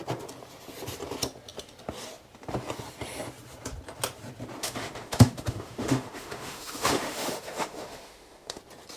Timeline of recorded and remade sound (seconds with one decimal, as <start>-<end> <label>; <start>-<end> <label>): 0.0-4.6 recorded; 4.6-8.6 remade; 8.6-9.0 recorded